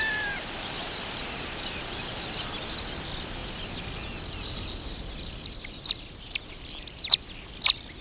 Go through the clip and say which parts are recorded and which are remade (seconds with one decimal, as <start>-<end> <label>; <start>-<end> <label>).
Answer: 0.0-8.0 recorded